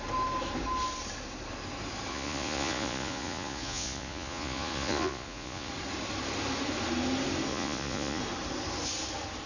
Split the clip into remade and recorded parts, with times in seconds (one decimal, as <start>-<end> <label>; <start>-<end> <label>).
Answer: 0.0-2.1 recorded; 2.1-5.7 remade; 5.7-7.5 recorded; 7.5-8.2 remade; 8.2-9.5 recorded